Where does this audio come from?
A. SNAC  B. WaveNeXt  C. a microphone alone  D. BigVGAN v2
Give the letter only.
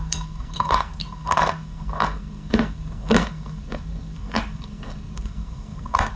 A